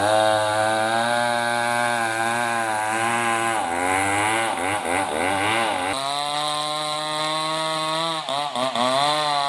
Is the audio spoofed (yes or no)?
no